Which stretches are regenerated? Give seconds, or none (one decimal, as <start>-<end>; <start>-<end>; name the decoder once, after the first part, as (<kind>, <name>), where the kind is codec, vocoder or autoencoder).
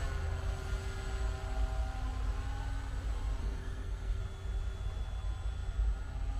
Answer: 3.4-4.2 (codec, SNAC)